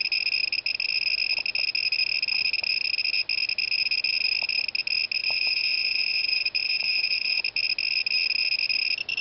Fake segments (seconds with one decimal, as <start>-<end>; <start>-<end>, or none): 5.2-7.4